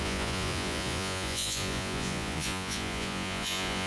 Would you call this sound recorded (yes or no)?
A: no